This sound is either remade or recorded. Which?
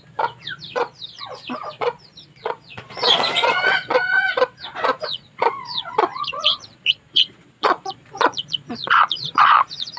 remade